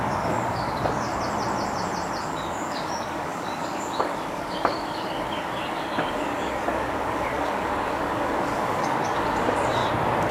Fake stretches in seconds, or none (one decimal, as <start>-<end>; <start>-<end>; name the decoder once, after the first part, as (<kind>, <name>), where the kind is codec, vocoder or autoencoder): 0.0-1.1 (codec, DAC); 2.2-9.8